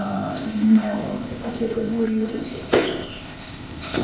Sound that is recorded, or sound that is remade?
remade